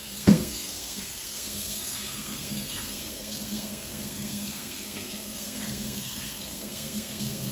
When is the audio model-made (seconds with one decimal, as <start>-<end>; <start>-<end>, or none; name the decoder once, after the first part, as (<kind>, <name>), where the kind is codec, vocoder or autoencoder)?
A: 0.0-7.5 (codec, SNAC)